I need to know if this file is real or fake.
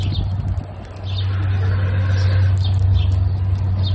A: real